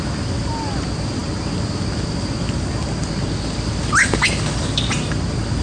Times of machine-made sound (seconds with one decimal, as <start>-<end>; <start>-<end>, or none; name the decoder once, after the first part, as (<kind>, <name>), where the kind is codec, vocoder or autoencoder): none